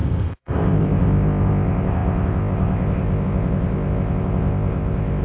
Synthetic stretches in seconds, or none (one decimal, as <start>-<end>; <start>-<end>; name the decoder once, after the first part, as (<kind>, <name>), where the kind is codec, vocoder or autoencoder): 0.0-5.2 (codec, ZipCodec)